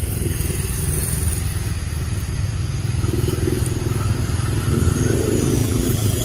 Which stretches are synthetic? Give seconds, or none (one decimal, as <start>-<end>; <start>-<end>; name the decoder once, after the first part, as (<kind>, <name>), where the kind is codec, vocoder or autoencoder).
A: 5.6-6.2 (vocoder, BigVGAN v2)